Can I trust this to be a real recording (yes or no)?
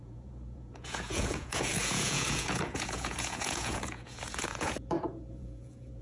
no